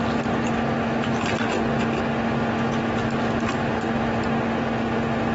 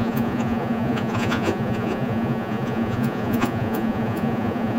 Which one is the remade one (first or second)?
second